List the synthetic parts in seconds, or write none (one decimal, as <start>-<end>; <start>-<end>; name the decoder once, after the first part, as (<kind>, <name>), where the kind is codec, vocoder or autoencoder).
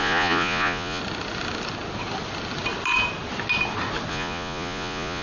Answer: 0.0-1.0 (vocoder, Vocos); 4.1-5.2